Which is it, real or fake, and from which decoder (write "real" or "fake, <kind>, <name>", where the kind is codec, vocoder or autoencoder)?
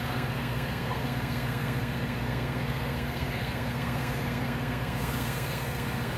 fake, codec, SNAC